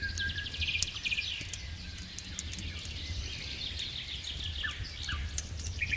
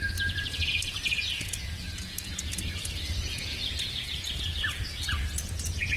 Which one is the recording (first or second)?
first